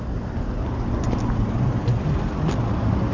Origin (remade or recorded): recorded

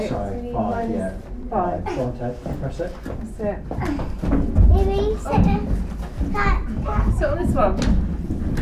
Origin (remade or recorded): recorded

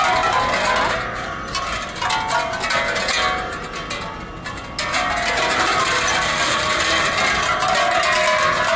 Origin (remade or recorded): recorded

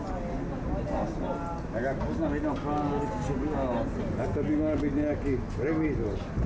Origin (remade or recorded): recorded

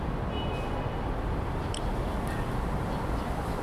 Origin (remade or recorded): recorded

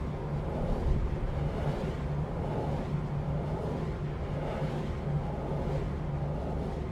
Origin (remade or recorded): recorded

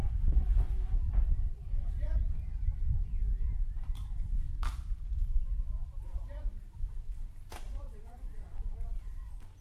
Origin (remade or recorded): remade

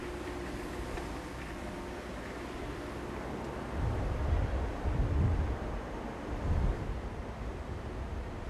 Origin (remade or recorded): recorded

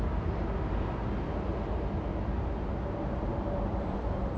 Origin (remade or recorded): recorded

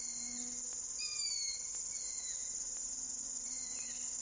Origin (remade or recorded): recorded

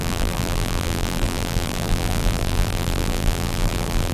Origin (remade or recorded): remade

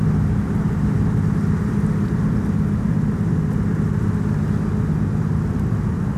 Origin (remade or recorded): recorded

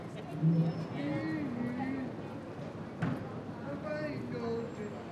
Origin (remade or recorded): recorded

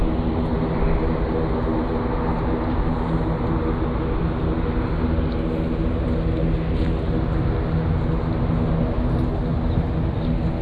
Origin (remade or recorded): recorded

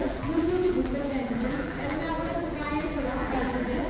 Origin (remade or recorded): remade